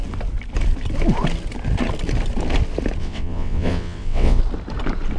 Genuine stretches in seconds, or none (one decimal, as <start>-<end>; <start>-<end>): 0.0-3.0; 4.4-5.2